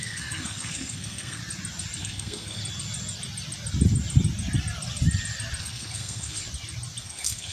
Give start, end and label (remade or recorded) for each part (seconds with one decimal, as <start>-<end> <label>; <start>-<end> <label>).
0.0-1.4 remade; 1.4-2.0 recorded; 2.0-2.6 remade; 2.6-5.6 recorded; 5.6-6.4 remade; 6.4-7.0 recorded; 7.0-7.5 remade